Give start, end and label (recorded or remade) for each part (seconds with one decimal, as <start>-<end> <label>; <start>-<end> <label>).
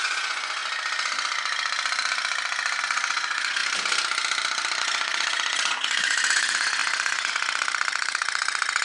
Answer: 0.0-0.6 remade; 0.6-2.8 recorded; 2.8-3.6 remade; 3.6-4.8 recorded; 4.8-8.8 remade